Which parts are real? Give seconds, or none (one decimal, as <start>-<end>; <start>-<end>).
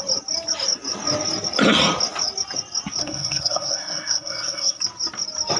0.0-3.0; 4.8-5.6